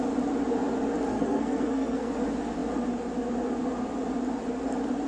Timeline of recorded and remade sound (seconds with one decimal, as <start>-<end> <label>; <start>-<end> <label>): 0.0-1.1 recorded; 1.1-2.1 remade; 2.1-5.1 recorded